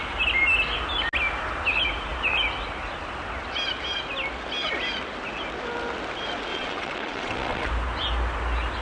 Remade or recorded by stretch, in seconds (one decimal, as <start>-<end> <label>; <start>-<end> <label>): 0.0-6.5 recorded; 6.5-7.7 remade; 7.7-8.8 recorded